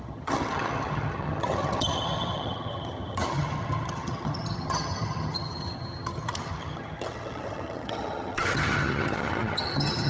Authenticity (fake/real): fake